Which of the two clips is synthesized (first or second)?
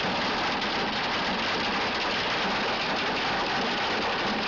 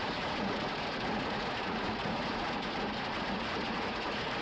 second